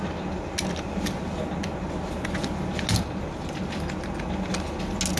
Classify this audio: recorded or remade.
recorded